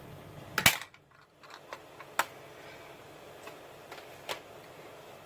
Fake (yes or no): no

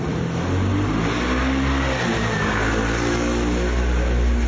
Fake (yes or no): no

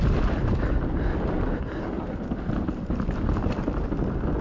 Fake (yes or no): no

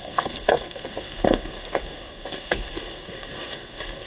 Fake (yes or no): yes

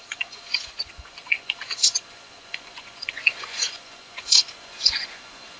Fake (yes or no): yes